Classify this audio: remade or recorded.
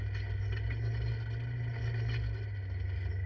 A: recorded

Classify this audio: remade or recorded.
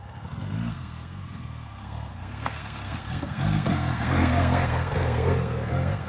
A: remade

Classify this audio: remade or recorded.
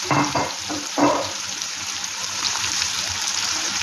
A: remade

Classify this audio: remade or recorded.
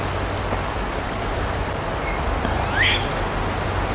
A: recorded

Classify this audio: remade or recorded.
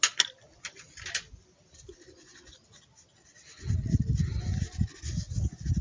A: recorded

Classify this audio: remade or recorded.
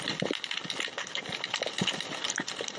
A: recorded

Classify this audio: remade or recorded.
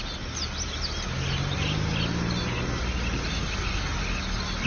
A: recorded